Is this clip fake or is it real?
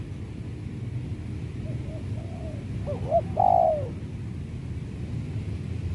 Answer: real